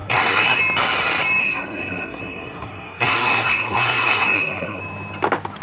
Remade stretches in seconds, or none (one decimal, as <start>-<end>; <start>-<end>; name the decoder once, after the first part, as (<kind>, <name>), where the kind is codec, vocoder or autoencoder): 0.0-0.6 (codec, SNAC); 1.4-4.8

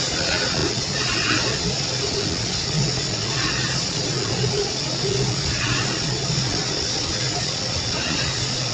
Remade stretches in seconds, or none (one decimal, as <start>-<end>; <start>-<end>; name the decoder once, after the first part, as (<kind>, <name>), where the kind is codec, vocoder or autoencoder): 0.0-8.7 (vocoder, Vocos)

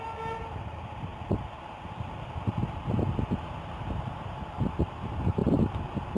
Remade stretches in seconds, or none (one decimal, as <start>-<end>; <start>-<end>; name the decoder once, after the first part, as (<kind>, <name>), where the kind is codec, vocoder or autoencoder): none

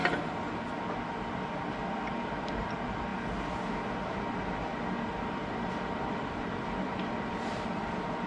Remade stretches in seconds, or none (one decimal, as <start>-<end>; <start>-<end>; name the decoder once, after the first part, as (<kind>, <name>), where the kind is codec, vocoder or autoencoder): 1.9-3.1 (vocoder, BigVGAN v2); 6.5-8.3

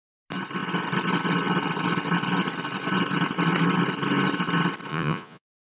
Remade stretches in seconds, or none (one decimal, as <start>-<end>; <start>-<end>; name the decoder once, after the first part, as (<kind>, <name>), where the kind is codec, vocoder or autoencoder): 4.9-5.6 (vocoder, Vocos)

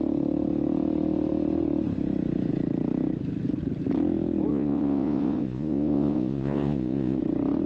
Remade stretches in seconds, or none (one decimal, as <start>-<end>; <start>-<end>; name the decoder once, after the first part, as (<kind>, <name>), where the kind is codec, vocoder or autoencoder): 4.5-7.2 (vocoder, Vocos)

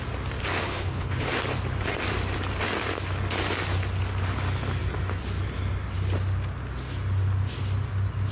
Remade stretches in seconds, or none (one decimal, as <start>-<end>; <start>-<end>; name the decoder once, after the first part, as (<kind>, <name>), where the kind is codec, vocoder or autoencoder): 0.6-1.3 (codec, HILCodec)

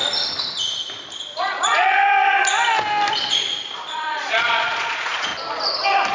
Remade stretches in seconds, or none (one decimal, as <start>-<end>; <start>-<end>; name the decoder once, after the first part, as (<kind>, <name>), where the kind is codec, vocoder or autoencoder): 1.4-2.0 (vocoder, Vocos); 3.1-5.3